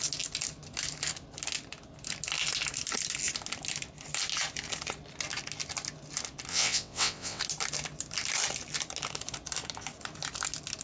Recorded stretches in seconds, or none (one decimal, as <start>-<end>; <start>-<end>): 0.0-6.5; 7.4-10.8